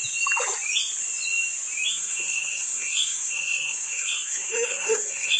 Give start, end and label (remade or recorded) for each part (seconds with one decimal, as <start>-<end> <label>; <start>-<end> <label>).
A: 0.0-1.9 recorded; 1.9-5.4 remade